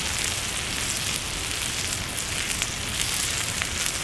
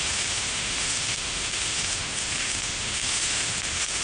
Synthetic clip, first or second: second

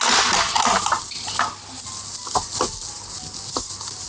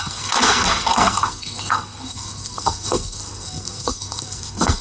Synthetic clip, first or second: second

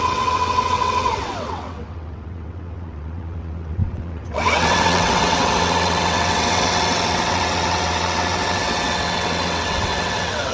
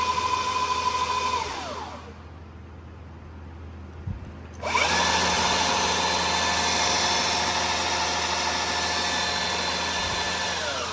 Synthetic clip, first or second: first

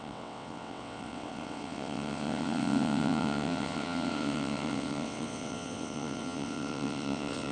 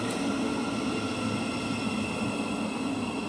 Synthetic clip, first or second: first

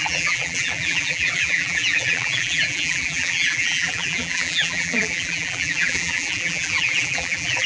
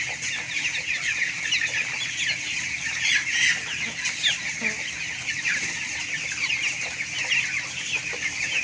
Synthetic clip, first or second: first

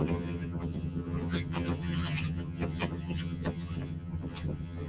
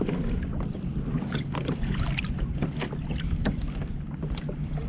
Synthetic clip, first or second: first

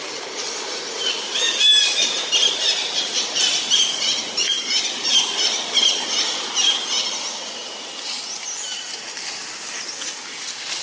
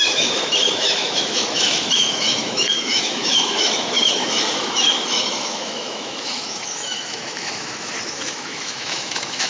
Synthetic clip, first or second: second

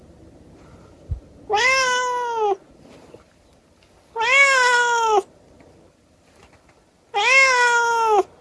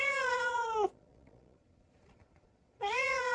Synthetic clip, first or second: second